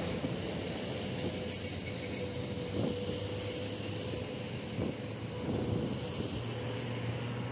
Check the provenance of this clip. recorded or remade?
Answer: recorded